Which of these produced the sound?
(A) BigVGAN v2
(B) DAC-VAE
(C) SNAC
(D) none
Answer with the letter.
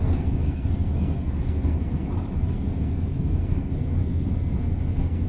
C